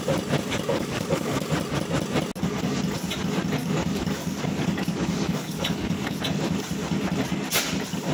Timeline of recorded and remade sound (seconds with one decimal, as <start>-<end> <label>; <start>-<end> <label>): 0.0-0.7 recorded; 0.7-1.5 remade; 1.5-3.6 recorded; 3.6-6.2 remade; 6.2-8.1 recorded

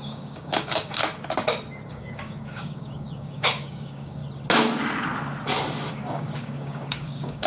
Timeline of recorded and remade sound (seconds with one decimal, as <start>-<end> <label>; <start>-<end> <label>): 0.0-1.0 remade; 1.0-1.9 recorded; 1.9-4.2 remade; 4.2-5.9 recorded; 5.9-7.5 remade

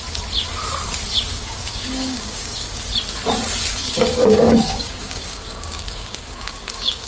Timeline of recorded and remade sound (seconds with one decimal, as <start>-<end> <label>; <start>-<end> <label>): 0.0-1.3 recorded; 1.3-2.8 remade; 2.8-3.8 recorded; 3.8-7.1 remade

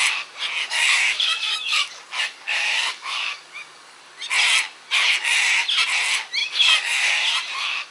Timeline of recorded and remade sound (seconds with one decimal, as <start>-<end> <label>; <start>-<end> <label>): 0.0-0.6 recorded; 0.6-4.0 remade; 4.0-6.4 recorded; 6.4-7.1 remade; 7.1-7.9 recorded